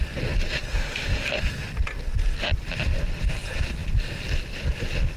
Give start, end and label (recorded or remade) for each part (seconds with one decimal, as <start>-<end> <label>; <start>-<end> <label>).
0.0-0.7 recorded; 0.7-1.4 remade; 1.4-5.2 recorded